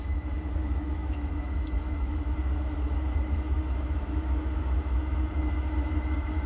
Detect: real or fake fake